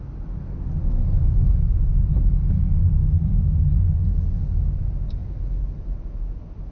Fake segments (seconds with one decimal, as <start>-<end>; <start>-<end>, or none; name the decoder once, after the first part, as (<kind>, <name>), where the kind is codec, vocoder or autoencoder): 3.0-3.6 (codec, DAC)